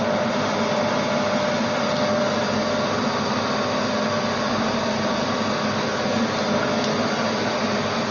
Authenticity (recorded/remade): recorded